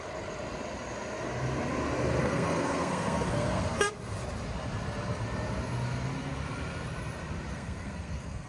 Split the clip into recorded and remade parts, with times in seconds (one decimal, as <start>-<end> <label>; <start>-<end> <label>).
0.0-2.2 recorded; 2.2-3.9 remade; 3.9-7.5 recorded; 7.5-8.5 remade